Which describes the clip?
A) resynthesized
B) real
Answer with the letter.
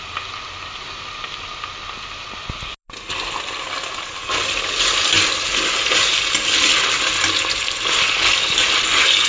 B